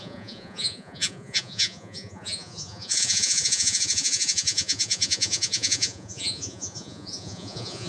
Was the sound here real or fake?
fake